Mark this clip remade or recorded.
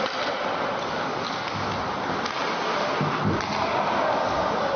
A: recorded